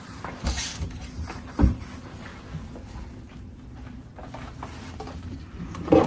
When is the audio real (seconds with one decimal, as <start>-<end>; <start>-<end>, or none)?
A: 2.3-4.9